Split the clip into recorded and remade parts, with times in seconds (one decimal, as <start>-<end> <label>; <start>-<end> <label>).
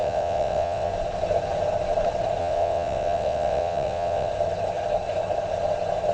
0.0-0.9 remade; 0.9-2.4 recorded; 2.4-4.3 remade; 4.3-6.1 recorded